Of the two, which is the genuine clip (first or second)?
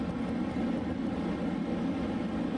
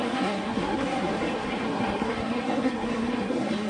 first